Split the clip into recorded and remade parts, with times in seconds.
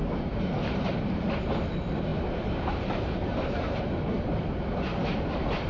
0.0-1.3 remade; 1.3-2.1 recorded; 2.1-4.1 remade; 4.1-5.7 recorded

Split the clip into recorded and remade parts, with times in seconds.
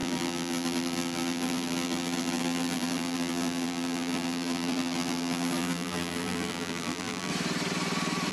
0.0-7.3 remade; 7.3-8.3 recorded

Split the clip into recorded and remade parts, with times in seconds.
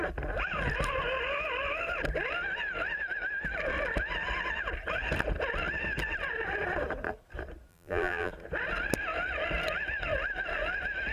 0.0-7.7 recorded; 7.7-8.3 remade; 8.3-11.1 recorded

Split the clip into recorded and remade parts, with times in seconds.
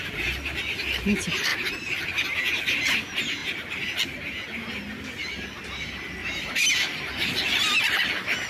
0.0-6.2 recorded; 6.2-6.7 remade; 6.7-8.5 recorded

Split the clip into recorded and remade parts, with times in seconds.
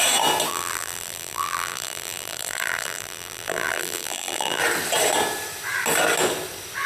0.0-0.5 recorded; 0.5-4.6 remade; 4.6-6.9 recorded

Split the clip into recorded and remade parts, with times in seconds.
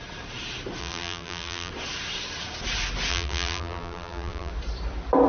0.0-0.8 recorded; 0.8-1.7 remade; 1.7-3.1 recorded; 3.1-4.5 remade; 4.5-5.3 recorded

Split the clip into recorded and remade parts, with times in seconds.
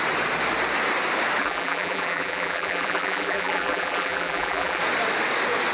0.0-1.4 recorded; 1.4-4.8 remade; 4.8-5.7 recorded